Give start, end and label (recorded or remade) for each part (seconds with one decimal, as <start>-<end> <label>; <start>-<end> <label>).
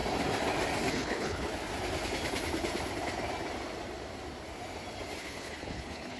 0.0-0.9 recorded; 0.9-1.5 remade; 1.5-5.2 recorded; 5.2-6.2 remade